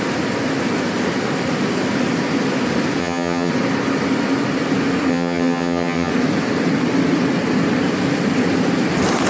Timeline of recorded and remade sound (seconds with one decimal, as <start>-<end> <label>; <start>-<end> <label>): 0.0-3.0 recorded; 3.0-3.5 remade; 3.5-5.1 recorded; 5.1-6.1 remade; 6.1-9.3 recorded